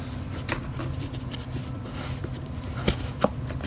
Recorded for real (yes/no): yes